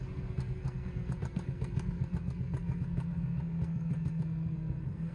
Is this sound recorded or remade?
remade